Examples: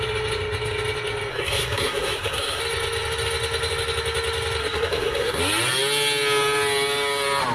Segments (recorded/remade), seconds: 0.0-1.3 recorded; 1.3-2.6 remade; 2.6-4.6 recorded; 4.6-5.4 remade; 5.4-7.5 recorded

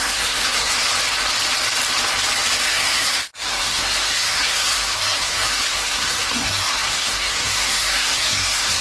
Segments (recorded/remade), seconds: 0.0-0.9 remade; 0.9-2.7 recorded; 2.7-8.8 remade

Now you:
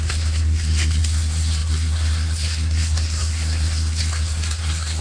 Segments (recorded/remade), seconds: 0.0-5.0 remade